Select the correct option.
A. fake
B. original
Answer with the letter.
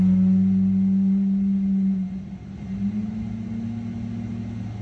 B